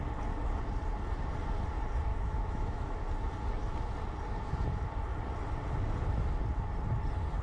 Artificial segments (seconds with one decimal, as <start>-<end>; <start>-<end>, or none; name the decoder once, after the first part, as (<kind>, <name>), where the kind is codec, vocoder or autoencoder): 2.1-3.1 (autoencoder, DAC-VAE)